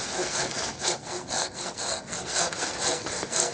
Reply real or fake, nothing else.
fake